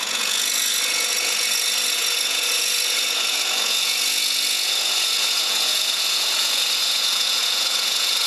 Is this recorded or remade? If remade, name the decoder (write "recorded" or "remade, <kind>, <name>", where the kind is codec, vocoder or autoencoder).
remade, vocoder, Vocos